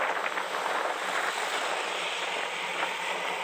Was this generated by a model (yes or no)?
no